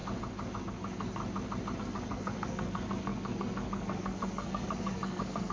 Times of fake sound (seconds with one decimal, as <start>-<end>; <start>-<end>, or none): 0.6-1.2; 1.8-5.5